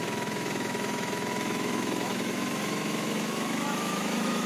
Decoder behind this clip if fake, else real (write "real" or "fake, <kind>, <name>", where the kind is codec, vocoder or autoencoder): fake, autoencoder, DAC-VAE